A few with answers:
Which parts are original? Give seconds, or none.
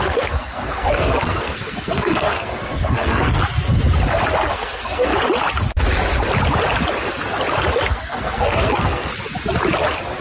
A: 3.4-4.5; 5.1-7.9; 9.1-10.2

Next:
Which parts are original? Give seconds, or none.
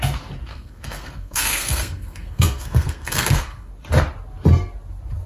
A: 0.0-0.5; 3.7-5.3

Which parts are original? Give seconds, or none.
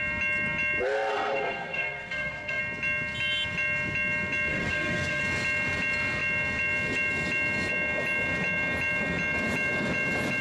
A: 0.0-1.1; 2.6-4.5; 5.2-10.4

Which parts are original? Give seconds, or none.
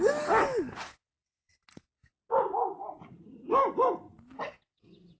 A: 0.0-5.2